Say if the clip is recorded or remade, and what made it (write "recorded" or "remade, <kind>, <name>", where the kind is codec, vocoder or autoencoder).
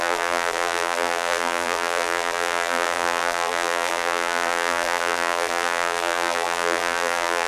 remade, vocoder, BigVGAN v2